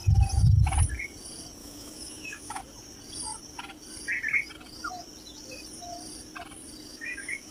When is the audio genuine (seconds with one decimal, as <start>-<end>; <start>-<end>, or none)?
0.0-1.6; 2.6-6.9